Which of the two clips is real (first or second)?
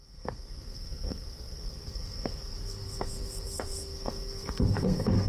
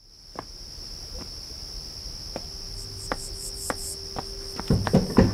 second